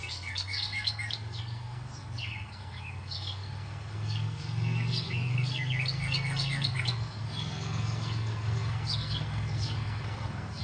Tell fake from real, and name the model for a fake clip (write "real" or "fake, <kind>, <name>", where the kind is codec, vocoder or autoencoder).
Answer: fake, codec, SNAC